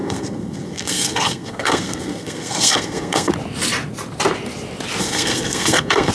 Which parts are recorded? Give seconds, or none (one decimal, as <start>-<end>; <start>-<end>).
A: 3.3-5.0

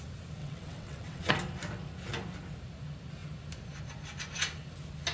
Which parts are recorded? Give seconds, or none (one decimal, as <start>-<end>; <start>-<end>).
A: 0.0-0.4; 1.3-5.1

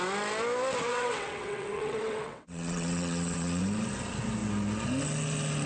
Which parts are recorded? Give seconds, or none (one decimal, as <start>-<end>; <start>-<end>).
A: 0.0-0.9; 3.6-5.7

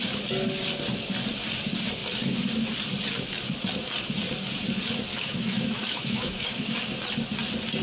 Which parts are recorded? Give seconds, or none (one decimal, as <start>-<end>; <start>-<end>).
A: 0.0-5.1; 6.6-7.8

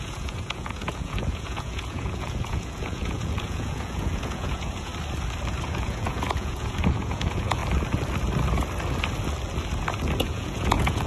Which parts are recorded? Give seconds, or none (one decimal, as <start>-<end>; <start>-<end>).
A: 4.9-5.6; 7.6-10.2

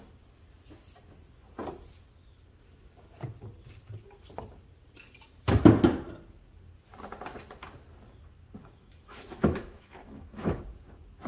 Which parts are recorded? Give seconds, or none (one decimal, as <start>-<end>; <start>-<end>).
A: 0.0-8.6; 10.6-11.3